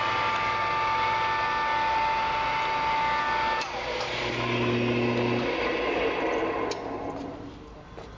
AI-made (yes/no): no